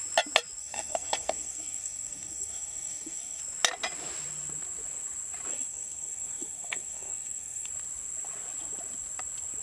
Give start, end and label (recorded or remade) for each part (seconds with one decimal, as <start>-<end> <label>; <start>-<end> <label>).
0.0-0.6 recorded; 0.6-3.4 remade; 3.4-5.5 recorded; 5.5-7.7 remade; 7.7-9.6 recorded